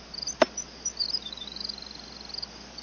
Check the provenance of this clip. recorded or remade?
recorded